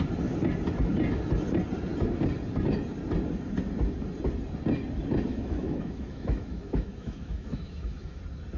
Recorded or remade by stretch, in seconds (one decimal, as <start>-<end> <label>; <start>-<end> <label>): 0.0-5.3 recorded; 5.3-8.2 remade; 8.2-8.6 recorded